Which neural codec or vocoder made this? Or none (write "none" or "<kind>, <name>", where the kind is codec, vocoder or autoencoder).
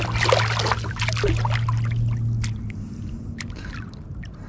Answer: none